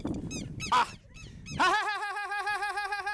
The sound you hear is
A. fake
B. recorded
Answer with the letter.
B